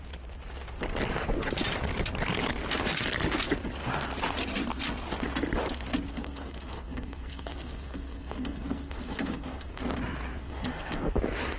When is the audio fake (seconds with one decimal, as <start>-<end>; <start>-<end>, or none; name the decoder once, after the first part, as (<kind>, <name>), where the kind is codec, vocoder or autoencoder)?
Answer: 6.1-9.8 (codec, SNAC); 10.4-11.2